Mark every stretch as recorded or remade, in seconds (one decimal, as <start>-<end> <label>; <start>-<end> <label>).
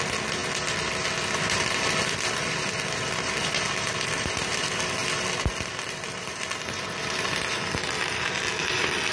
0.0-9.1 recorded